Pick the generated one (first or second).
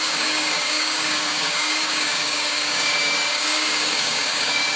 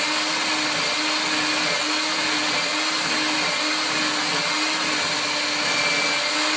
first